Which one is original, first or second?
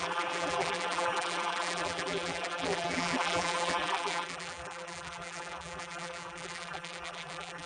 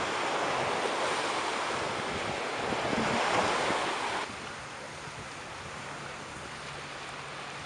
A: second